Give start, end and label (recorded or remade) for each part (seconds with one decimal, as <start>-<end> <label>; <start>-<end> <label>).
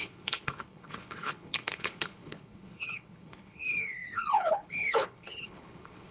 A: 0.0-6.1 remade